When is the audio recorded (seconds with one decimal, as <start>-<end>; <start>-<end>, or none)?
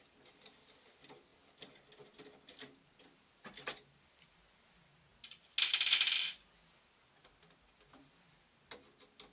0.0-9.3